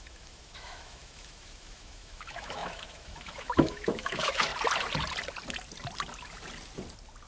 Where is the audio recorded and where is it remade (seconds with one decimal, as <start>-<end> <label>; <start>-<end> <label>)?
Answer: 0.0-4.5 remade; 4.5-7.3 recorded